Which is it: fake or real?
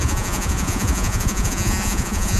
fake